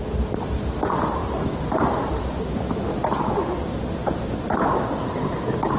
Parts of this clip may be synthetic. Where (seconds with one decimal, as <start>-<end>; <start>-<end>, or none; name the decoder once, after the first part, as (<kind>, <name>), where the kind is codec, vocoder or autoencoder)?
none